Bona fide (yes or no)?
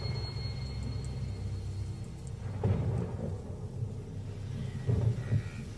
yes